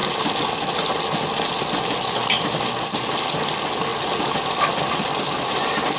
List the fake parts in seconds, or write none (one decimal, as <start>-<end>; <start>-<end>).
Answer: none